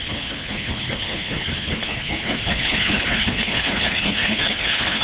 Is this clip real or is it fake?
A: fake